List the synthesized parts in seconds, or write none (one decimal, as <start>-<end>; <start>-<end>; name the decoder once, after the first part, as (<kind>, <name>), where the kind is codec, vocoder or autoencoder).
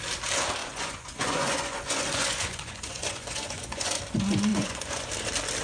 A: 0.6-4.0 (vocoder, Vocos); 4.5-5.1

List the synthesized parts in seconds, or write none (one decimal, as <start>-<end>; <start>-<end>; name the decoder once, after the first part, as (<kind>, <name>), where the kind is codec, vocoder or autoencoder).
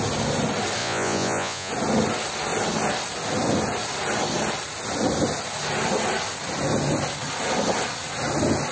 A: 0.8-1.7 (vocoder, Vocos)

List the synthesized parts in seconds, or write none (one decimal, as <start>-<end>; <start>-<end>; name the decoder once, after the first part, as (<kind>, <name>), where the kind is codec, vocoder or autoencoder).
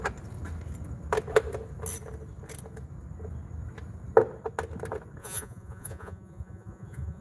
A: 5.2-7.2 (vocoder, Vocos)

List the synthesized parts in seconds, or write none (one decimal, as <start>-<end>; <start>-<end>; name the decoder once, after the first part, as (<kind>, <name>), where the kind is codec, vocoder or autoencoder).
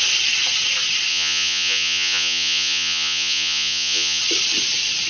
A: 1.1-4.2 (vocoder, Vocos)